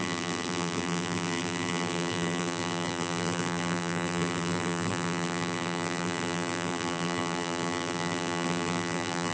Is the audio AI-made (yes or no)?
yes